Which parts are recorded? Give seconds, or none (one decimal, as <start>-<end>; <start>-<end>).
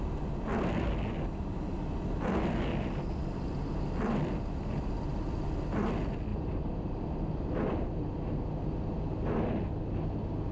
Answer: 0.0-6.3; 8.7-10.5